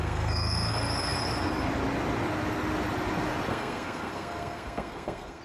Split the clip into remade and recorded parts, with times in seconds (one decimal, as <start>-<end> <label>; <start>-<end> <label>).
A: 0.0-0.7 remade; 0.7-3.5 recorded; 3.5-5.4 remade